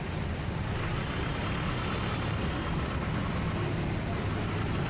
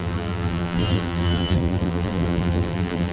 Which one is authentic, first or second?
first